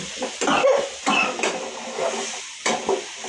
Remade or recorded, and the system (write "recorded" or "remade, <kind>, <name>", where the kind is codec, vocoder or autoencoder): recorded